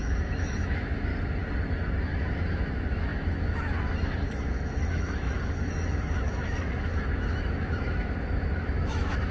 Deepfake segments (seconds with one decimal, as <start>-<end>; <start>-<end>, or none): 0.0-1.1; 2.0-9.3